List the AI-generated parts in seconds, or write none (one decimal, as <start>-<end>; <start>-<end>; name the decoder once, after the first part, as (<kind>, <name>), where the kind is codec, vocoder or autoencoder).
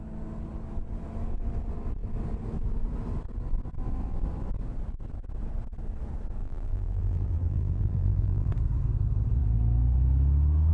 6.4-8.5 (vocoder, BigVGAN v2)